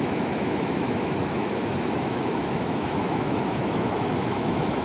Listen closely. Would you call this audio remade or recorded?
remade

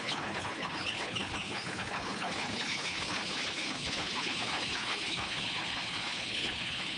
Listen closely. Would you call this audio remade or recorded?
remade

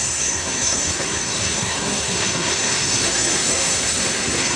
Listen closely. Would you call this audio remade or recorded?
remade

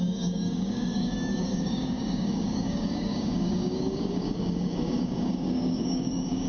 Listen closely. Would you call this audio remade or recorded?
remade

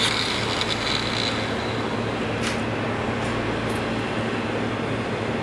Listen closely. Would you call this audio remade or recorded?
recorded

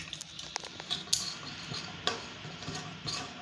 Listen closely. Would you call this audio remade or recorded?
recorded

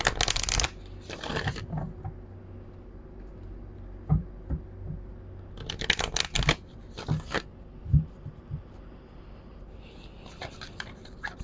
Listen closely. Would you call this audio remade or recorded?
recorded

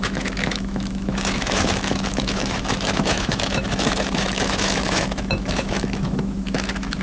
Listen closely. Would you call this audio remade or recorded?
remade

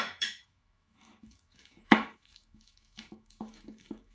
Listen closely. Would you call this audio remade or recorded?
remade